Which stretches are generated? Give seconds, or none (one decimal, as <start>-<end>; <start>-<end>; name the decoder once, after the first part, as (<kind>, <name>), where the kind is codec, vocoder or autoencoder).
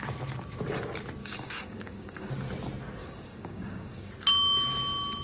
1.2-2.3 (codec, DAC); 3.0-4.1